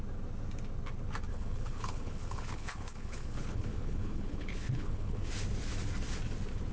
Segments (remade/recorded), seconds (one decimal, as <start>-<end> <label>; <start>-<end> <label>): 0.0-1.3 recorded; 1.3-5.3 remade; 5.3-6.7 recorded